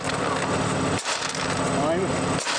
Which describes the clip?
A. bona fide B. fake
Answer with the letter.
A